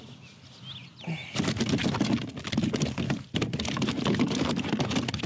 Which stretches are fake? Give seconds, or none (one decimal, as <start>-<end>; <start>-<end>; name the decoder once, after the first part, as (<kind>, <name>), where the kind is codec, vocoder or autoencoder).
none